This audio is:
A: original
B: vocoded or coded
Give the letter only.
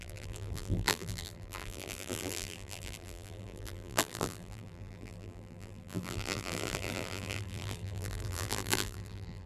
B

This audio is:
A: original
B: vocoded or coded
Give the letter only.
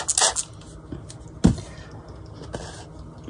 A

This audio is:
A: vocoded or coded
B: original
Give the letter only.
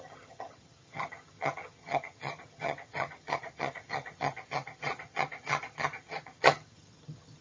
A